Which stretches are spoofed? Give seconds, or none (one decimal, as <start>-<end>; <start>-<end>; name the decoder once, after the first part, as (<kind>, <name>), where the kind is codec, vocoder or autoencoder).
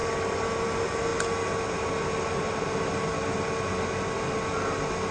none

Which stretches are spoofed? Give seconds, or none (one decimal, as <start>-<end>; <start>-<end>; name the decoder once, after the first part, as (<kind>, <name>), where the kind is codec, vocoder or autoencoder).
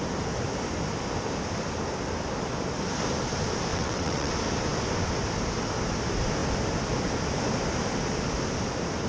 3.7-4.3 (vocoder, WaveNeXt)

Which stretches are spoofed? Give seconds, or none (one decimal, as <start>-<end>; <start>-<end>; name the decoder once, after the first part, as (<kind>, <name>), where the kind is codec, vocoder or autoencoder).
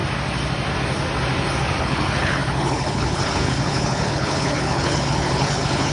1.8-5.9 (codec, HILCodec)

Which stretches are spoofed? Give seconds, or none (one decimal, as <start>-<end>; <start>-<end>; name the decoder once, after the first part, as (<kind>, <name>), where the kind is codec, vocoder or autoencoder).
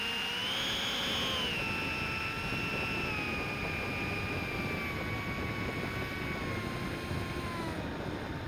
none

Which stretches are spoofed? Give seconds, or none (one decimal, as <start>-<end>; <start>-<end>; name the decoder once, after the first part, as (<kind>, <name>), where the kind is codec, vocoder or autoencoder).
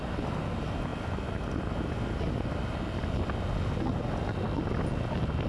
none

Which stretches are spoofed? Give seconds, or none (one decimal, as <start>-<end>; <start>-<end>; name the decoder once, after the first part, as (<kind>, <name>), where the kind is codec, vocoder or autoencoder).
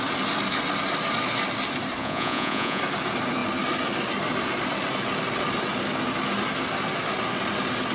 2.0-2.8 (vocoder, Vocos)